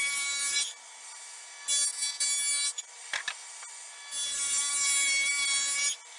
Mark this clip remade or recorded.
recorded